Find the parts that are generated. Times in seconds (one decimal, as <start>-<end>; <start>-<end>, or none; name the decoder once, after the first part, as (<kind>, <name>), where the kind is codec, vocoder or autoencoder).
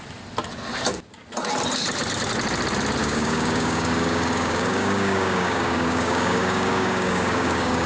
3.0-7.9 (codec, DAC)